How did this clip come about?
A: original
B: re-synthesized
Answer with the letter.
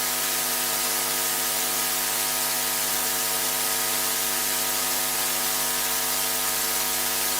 A